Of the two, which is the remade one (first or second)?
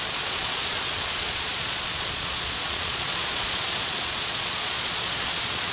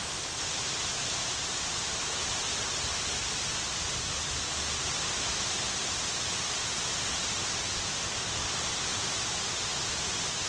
first